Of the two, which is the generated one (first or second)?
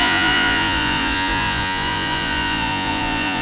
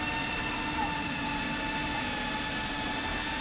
first